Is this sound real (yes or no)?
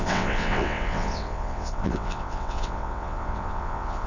no